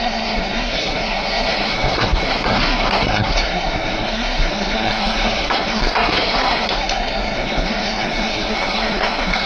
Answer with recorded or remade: remade